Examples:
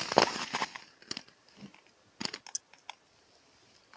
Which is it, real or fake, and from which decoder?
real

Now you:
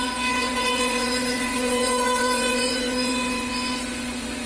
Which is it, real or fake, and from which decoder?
fake, vocoder, Vocos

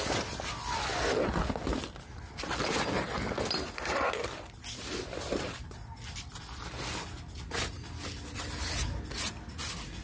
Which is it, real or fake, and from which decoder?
real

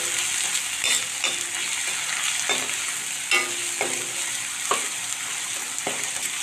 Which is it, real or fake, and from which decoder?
real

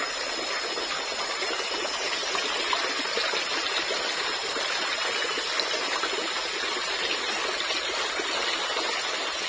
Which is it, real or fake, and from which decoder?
real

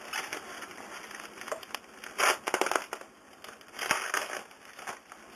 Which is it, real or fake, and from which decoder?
real